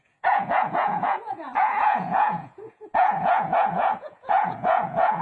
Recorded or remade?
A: remade